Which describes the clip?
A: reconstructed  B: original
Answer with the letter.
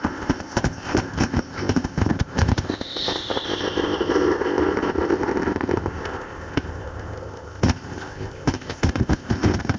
A